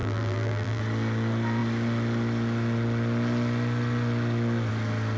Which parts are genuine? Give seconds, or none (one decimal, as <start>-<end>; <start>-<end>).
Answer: 0.8-5.2